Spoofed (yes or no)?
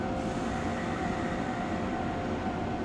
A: no